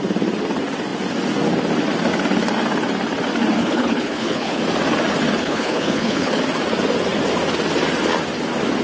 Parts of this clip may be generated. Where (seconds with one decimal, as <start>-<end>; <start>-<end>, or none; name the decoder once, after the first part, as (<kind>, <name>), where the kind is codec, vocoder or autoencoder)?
3.6-4.6 (codec, HILCodec); 5.4-6.4